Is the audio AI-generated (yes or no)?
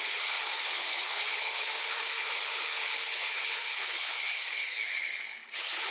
yes